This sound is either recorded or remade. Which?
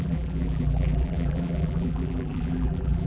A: remade